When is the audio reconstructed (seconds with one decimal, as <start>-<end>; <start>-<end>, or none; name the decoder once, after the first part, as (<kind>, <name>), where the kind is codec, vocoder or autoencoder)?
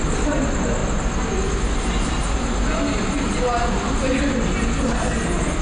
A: none